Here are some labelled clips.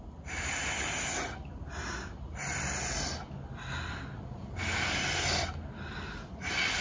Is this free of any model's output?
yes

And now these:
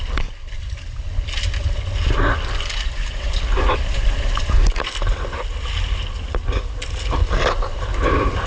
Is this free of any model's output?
yes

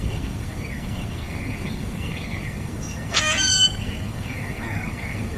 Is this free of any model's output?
no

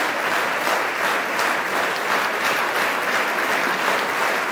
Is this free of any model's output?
no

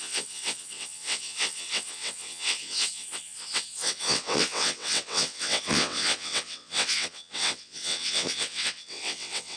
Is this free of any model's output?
no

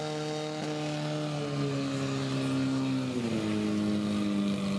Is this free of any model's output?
yes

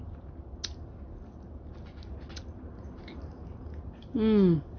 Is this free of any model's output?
yes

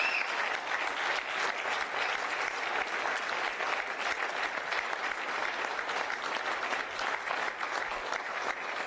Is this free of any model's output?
yes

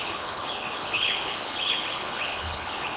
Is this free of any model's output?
no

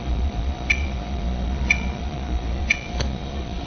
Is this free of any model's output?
no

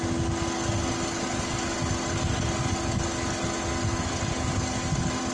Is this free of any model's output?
yes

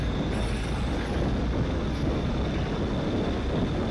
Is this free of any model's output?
yes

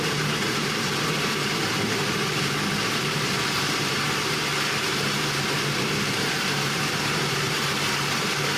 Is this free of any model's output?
no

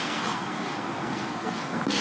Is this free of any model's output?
no